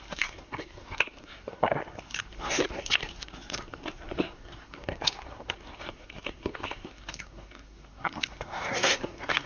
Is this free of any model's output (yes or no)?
no